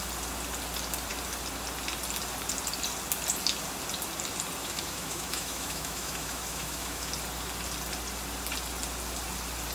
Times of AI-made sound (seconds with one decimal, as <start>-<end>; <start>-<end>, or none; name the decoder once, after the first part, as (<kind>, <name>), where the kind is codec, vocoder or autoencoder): 4.6-7.1 (autoencoder, DAC-VAE)